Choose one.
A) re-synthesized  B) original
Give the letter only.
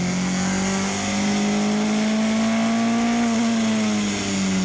B